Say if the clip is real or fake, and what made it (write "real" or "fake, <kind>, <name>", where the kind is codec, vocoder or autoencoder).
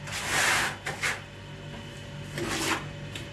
real